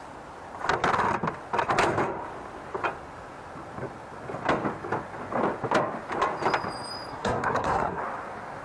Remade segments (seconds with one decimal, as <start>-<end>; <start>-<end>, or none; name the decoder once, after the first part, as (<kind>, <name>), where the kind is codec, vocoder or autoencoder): 7.1-8.0 (codec, SNAC)